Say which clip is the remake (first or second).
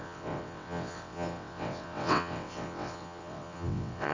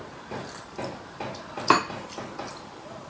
first